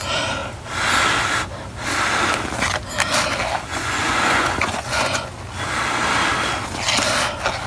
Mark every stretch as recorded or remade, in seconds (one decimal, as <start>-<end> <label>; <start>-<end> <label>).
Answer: 0.0-3.7 recorded; 3.7-5.3 remade; 5.3-7.7 recorded